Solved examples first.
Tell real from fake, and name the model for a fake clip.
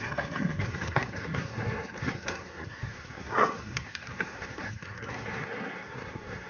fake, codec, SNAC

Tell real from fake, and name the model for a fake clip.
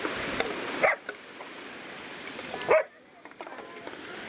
real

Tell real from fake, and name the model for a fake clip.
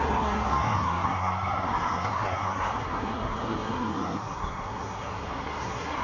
fake, codec, SNAC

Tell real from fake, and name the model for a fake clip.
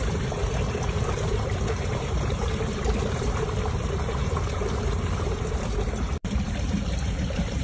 fake, vocoder, BigVGAN v2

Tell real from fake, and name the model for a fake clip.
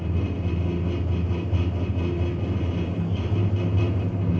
real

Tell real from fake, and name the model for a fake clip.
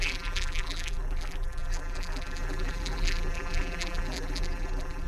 fake, vocoder, BigVGAN v2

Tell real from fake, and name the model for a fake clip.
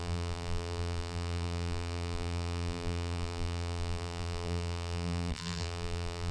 fake, vocoder, BigVGAN v2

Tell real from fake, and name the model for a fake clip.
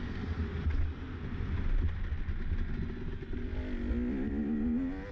real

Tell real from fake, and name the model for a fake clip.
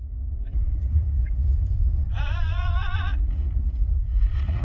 fake, vocoder, Vocos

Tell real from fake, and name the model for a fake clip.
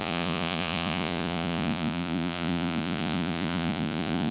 fake, vocoder, Vocos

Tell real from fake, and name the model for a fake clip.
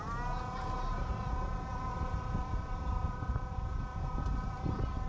real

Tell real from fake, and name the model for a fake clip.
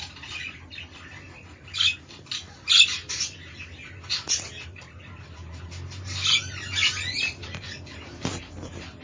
real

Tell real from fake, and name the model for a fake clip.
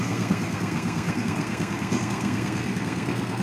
fake, codec, SNAC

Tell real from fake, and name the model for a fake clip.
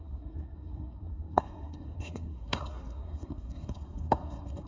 fake, codec, SNAC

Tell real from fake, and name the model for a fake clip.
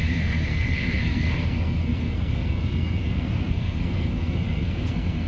fake, codec, SNAC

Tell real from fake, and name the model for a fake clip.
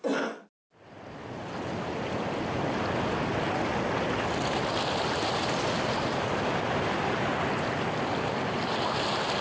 real